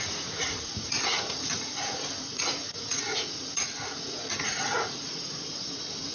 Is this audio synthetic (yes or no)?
yes